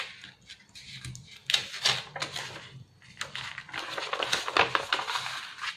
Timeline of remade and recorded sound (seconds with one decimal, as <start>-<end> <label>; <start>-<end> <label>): 0.0-5.8 recorded